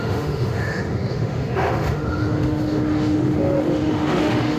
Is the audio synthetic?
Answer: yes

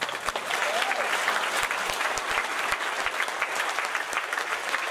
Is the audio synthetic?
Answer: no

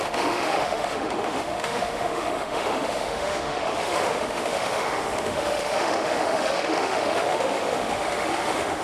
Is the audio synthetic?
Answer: yes